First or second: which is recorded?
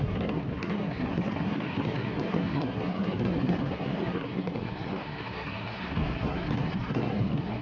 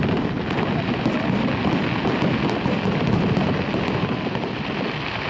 second